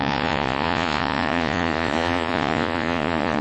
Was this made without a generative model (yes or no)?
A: no